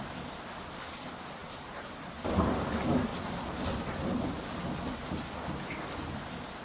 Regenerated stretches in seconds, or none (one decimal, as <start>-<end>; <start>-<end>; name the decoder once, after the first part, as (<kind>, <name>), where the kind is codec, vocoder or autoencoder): 1.4-2.1 (vocoder, BigVGAN v2)